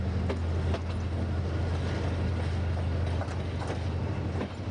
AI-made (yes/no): no